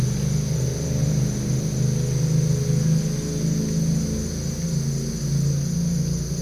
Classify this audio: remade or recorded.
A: recorded